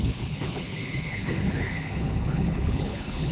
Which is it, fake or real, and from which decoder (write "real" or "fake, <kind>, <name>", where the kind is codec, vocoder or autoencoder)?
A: fake, codec, HILCodec